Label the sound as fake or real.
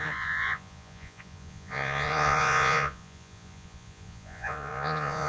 fake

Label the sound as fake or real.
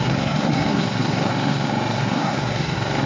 fake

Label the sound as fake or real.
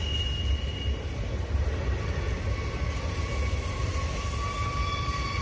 real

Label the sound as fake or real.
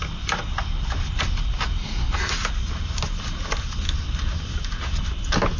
real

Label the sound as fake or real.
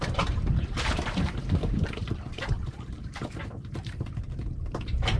fake